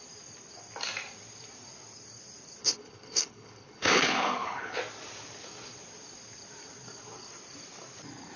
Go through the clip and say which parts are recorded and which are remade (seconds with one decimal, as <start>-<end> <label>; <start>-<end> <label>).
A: 0.0-2.6 recorded; 2.6-4.8 remade; 4.8-8.4 recorded